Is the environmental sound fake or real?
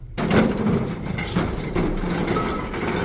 fake